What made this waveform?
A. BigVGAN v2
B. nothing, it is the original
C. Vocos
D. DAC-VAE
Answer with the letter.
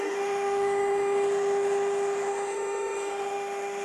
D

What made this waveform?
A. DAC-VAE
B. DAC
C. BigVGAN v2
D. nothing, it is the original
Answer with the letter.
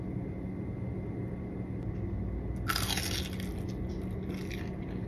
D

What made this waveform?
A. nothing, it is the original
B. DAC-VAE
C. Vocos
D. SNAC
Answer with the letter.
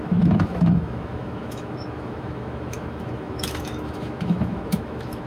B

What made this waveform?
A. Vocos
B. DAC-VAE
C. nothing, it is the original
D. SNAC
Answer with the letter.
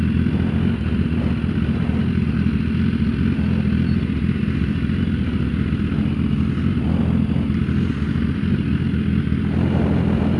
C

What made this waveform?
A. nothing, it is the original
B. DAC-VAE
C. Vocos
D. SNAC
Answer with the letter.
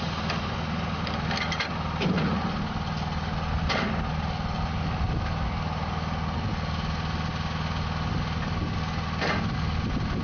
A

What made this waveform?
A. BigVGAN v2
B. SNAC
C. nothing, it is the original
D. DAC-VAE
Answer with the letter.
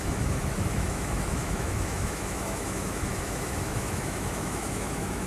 D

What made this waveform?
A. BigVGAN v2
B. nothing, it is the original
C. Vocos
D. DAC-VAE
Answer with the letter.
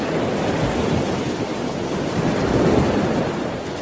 B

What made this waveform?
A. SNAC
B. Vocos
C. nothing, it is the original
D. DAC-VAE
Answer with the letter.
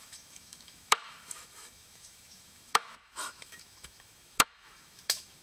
D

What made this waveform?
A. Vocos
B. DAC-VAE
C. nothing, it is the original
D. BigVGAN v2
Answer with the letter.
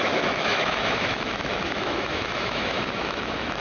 B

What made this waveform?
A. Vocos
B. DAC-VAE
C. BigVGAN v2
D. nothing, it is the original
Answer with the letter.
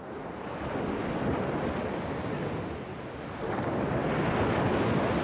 D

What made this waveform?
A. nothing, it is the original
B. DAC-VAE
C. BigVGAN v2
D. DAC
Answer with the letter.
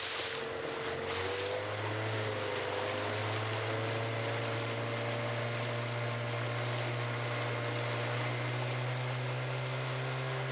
A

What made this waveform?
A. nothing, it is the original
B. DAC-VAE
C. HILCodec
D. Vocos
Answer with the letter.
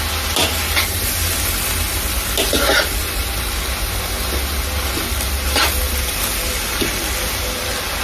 A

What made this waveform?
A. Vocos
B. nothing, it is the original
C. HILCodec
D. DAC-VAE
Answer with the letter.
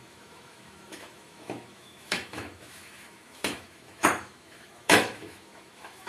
D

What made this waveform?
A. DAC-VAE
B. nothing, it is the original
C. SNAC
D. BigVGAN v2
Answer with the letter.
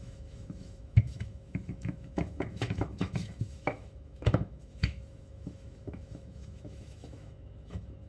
A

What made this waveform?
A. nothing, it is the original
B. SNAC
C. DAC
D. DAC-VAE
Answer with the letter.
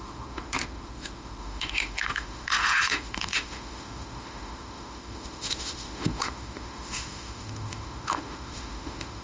D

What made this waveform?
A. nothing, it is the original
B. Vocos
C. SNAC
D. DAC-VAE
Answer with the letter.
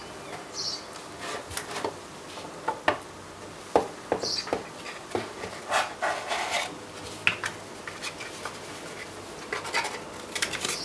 A